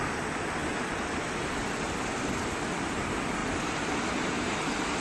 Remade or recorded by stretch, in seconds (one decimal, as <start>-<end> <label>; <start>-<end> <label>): 0.0-3.4 recorded; 3.4-5.0 remade